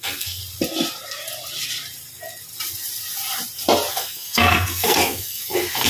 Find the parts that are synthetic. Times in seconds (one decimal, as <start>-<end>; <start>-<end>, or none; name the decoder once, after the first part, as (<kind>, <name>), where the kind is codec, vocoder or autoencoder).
0.0-0.4 (codec, SNAC); 3.9-5.9